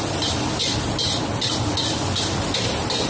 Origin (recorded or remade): recorded